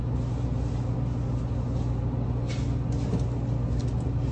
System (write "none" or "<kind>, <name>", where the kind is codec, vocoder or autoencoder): none